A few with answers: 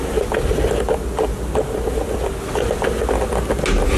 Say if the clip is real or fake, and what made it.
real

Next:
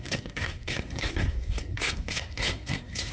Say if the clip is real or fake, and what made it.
fake, codec, SNAC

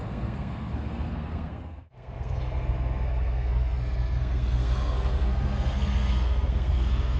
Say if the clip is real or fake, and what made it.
fake, codec, SNAC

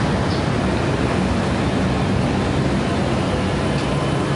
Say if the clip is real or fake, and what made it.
real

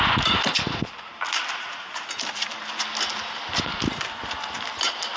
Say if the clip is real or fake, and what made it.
real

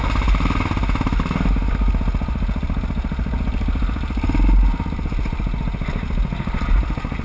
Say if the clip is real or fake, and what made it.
real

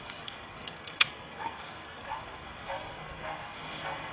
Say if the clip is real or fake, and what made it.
fake, codec, SNAC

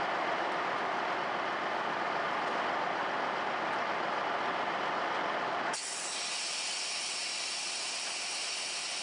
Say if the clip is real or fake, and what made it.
real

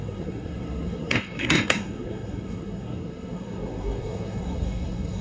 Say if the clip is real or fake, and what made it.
fake, codec, SNAC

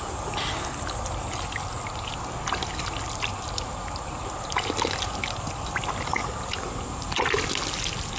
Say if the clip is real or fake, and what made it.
real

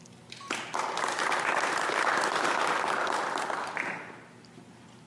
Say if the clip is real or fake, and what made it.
real